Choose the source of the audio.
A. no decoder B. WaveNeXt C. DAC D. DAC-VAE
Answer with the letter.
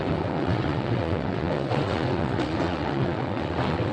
B